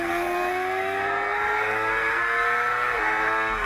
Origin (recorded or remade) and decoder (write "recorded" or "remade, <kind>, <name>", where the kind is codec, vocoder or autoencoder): remade, codec, SNAC